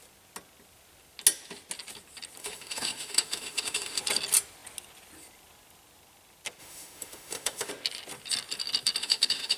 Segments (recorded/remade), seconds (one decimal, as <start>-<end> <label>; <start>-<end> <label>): 0.0-2.4 recorded; 2.4-4.0 remade; 4.0-6.6 recorded; 6.6-7.7 remade; 7.7-9.0 recorded; 9.0-9.6 remade